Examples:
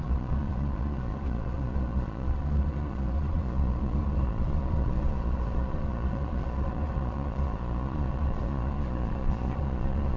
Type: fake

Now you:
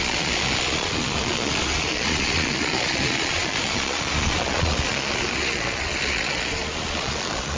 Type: fake